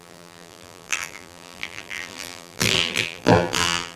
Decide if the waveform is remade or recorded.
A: remade